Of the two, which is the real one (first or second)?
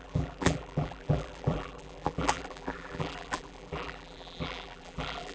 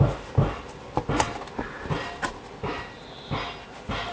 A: second